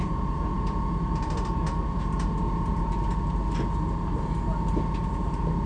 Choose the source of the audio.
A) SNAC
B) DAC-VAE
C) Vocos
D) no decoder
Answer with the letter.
D